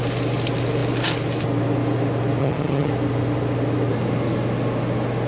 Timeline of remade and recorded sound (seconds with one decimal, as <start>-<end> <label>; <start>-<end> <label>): 0.0-2.4 recorded; 2.4-2.9 remade; 2.9-5.3 recorded